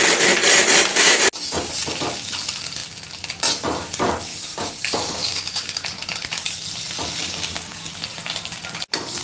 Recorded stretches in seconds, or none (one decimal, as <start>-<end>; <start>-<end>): 0.0-0.9; 1.7-4.3; 5.8-7.2; 7.9-9.2